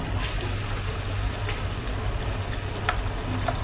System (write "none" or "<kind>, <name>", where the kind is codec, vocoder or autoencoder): none